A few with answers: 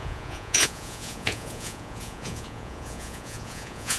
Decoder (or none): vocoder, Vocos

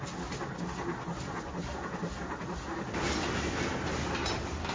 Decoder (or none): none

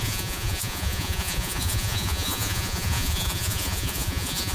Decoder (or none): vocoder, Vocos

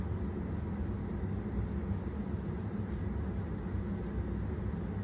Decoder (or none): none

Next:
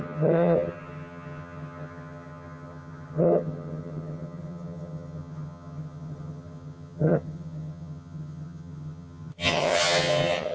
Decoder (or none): vocoder, HiFi-GAN